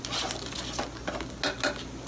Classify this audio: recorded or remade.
recorded